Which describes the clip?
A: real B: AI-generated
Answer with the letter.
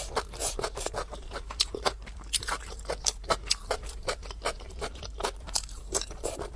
B